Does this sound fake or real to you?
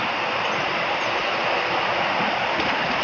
real